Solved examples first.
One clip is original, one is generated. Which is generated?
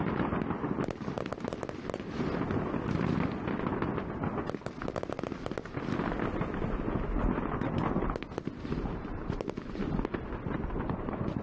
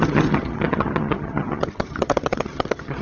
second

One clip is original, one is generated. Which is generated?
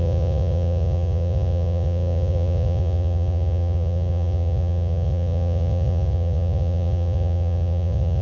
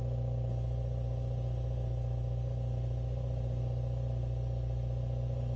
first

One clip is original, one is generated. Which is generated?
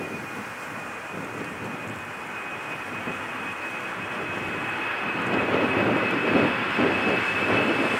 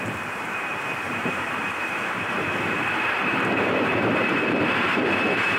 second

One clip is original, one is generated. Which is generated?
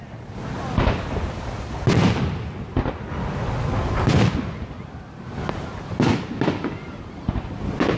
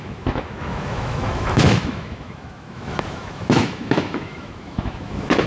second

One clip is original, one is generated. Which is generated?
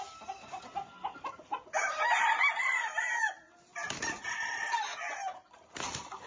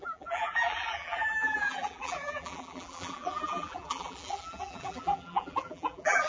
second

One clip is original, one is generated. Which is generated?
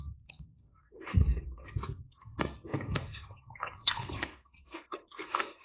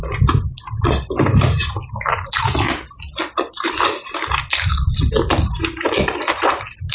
first